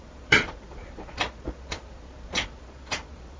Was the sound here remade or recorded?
remade